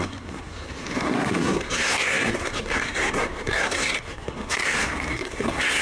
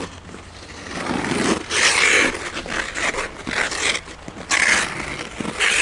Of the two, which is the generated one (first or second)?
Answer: first